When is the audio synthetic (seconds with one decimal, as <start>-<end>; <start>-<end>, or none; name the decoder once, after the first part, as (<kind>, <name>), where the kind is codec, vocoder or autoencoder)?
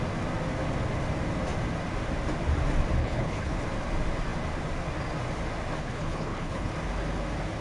3.0-3.6 (codec, HILCodec); 5.8-6.7